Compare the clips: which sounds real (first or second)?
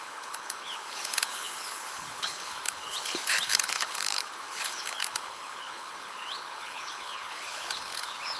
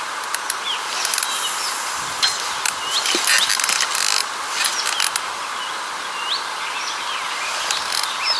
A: second